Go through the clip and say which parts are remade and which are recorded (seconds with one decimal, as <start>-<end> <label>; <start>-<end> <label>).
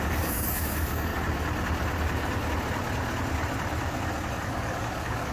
0.0-1.1 remade; 1.1-4.3 recorded; 4.3-5.3 remade